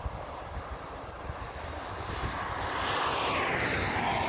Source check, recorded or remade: recorded